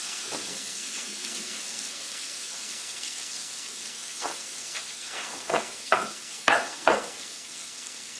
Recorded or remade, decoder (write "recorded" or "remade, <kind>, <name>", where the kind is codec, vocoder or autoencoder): remade, codec, SNAC